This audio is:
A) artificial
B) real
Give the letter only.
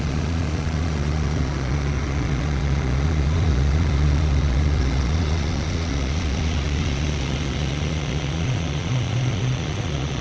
A